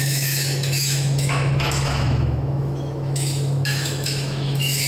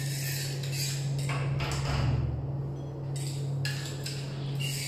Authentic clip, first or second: second